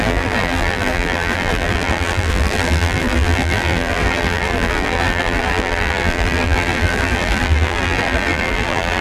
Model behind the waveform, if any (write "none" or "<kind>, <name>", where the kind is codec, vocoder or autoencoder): vocoder, BigVGAN v2